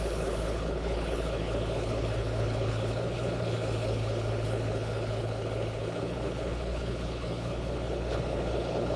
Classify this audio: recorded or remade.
remade